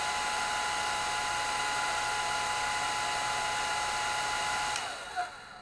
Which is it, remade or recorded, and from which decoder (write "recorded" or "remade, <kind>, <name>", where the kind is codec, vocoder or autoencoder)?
recorded